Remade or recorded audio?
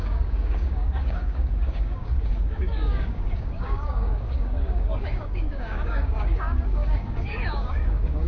remade